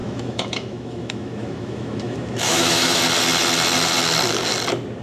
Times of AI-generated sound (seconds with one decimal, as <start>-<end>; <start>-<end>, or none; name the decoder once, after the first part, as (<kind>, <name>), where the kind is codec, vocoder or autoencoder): 0.0-3.0 (autoencoder, DAC-VAE)